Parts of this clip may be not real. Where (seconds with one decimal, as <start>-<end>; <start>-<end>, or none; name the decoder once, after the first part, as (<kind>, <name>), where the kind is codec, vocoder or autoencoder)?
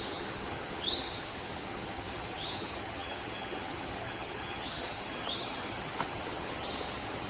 0.0-7.3 (vocoder, HiFi-GAN)